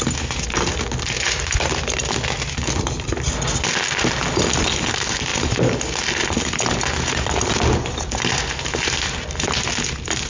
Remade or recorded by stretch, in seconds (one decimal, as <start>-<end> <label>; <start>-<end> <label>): 0.0-10.3 recorded